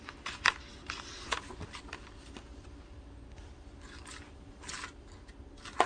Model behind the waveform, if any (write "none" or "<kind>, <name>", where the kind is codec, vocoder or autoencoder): none